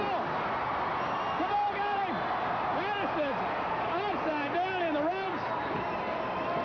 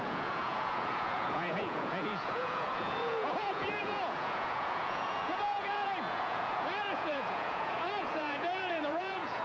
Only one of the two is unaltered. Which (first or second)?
first